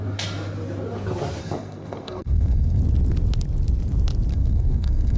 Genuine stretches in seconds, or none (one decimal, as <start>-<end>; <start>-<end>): 0.0-1.4; 2.8-4.3